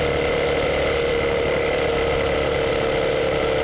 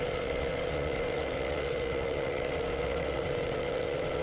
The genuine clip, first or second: first